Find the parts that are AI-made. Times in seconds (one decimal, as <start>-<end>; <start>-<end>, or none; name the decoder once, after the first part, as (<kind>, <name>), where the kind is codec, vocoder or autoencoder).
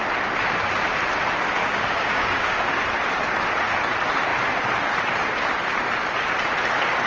1.6-2.8 (codec, DAC)